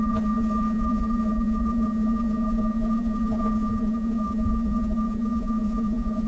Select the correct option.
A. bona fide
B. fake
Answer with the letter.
B